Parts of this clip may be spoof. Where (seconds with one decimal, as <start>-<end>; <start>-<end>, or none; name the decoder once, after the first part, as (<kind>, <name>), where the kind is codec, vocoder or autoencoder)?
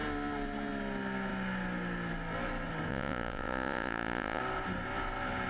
2.9-4.4 (vocoder, Vocos)